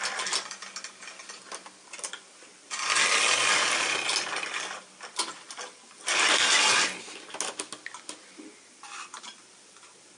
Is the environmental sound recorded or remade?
recorded